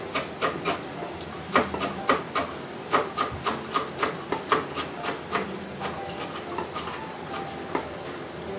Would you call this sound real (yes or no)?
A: yes